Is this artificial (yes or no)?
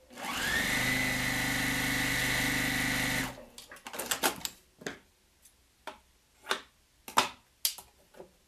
no